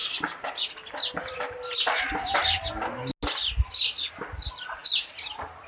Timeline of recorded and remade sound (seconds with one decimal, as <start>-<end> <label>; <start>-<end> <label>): 0.0-5.7 recorded

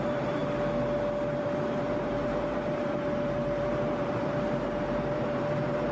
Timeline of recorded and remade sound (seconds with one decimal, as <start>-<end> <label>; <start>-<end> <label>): 0.0-0.4 remade; 0.4-1.4 recorded; 1.4-5.9 remade

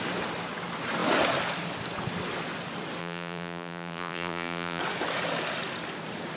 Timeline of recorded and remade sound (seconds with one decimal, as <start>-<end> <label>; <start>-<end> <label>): 0.0-3.0 recorded; 3.0-4.8 remade; 4.8-6.4 recorded

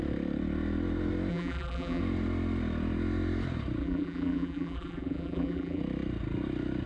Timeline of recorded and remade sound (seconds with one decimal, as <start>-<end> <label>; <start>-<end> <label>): 0.0-1.3 recorded; 1.3-2.0 remade; 2.0-3.8 recorded; 3.8-5.8 remade; 5.8-6.9 recorded

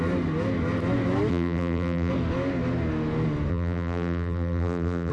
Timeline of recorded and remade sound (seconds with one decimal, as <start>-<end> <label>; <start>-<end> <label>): 0.0-1.3 recorded; 1.3-2.1 remade; 2.1-3.5 recorded; 3.5-5.1 remade

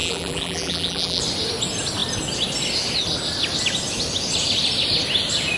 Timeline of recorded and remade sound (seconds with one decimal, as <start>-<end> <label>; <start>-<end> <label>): 0.0-1.2 remade; 1.2-5.6 recorded